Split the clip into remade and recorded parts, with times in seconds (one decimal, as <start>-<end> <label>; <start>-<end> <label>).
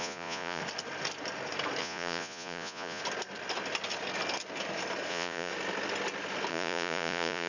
0.0-0.6 remade; 0.6-1.8 recorded; 1.8-3.0 remade; 3.0-5.1 recorded; 5.1-5.5 remade; 5.5-6.5 recorded; 6.5-7.5 remade